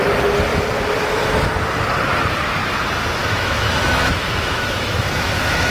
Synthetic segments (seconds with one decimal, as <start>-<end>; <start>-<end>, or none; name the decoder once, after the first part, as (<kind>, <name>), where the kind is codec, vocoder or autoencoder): 3.2-5.7 (autoencoder, DAC-VAE)